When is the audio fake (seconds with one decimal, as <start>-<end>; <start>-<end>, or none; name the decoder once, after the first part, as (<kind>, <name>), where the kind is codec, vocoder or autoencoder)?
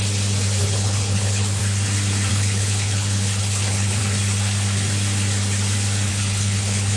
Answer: 0.6-1.6 (codec, HILCodec); 2.3-4.0; 6.1-7.0